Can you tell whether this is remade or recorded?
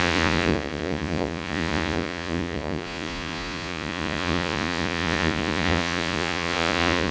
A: remade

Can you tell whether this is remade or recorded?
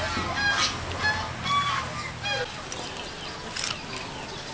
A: recorded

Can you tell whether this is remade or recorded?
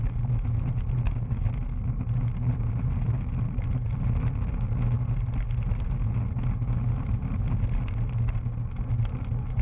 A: recorded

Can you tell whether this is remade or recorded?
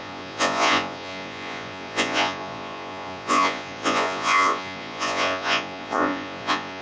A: remade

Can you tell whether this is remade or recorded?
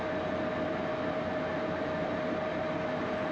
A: recorded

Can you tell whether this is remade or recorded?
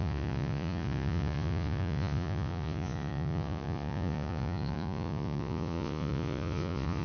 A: remade